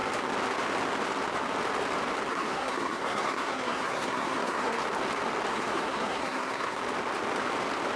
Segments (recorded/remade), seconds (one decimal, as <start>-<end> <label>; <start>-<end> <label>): 0.0-2.3 recorded; 2.3-4.8 remade; 4.8-5.5 recorded; 5.5-6.8 remade; 6.8-8.0 recorded